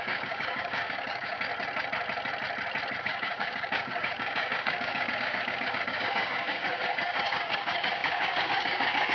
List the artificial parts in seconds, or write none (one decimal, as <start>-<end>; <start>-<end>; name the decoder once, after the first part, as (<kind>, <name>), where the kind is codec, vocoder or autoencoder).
0.0-1.5 (codec, DAC); 3.0-9.1